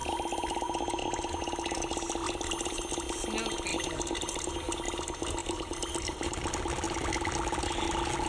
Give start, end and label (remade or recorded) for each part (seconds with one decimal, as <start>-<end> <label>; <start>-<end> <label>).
0.0-3.7 recorded; 3.7-4.5 remade; 4.5-5.4 recorded; 5.4-6.5 remade; 6.5-8.3 recorded